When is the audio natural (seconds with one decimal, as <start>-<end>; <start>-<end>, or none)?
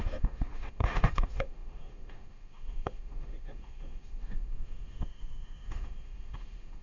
none